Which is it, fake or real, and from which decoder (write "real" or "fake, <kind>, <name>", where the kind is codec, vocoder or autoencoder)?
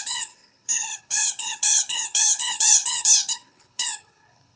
fake, codec, HILCodec